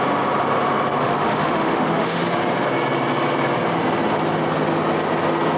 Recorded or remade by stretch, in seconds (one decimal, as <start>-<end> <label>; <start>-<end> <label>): 0.0-1.0 recorded; 1.0-2.2 remade; 2.2-5.6 recorded